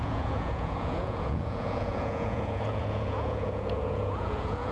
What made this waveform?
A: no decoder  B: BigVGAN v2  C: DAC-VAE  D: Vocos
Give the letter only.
D